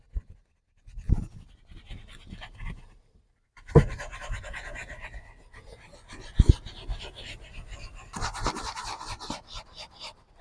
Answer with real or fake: real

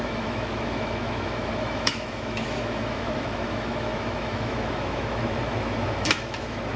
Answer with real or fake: fake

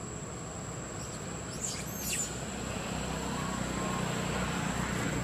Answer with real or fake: real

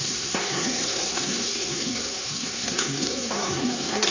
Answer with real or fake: fake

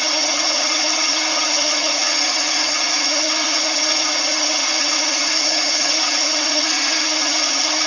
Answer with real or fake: fake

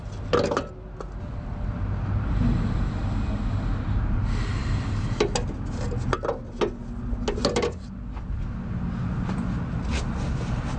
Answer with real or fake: real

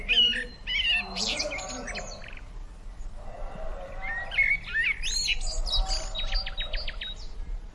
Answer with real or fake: real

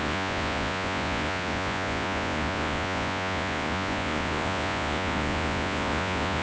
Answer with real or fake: fake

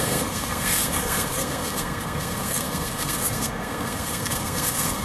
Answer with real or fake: fake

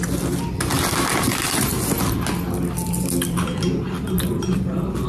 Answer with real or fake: real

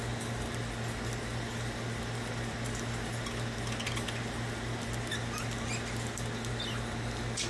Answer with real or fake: real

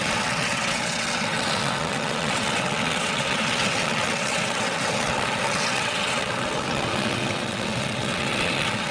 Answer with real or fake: fake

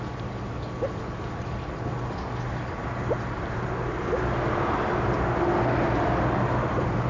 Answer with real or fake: real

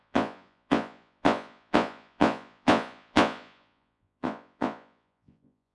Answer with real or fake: fake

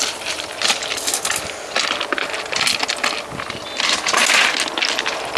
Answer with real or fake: real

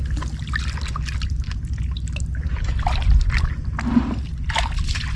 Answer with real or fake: real